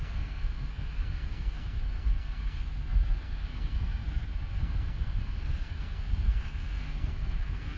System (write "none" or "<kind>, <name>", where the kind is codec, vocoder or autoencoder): codec, SNAC